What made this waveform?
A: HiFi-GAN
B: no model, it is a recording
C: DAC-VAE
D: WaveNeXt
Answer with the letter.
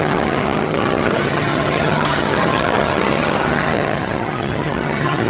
A